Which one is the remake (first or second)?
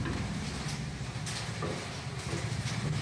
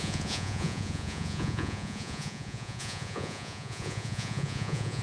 second